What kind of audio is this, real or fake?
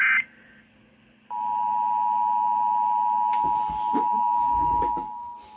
real